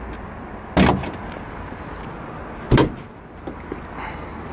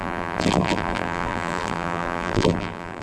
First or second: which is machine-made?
second